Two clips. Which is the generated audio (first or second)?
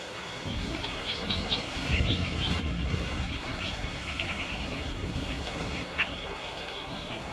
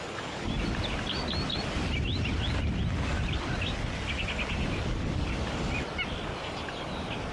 first